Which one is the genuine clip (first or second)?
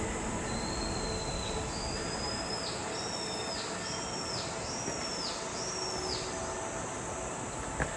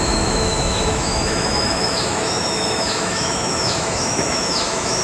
first